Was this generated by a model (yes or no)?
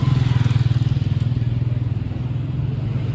no